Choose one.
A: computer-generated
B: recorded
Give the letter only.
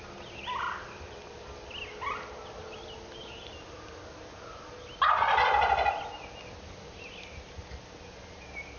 B